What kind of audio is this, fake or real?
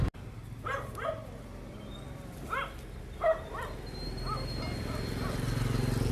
real